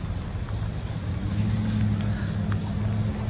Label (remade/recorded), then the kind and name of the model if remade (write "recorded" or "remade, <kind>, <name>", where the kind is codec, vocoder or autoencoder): recorded